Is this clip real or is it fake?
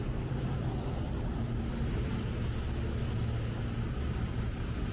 real